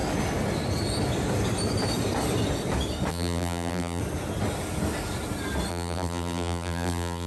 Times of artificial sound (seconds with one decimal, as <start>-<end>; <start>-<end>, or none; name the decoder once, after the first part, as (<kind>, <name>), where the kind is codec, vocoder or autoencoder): 3.1-4.0 (vocoder, BigVGAN v2); 5.7-7.3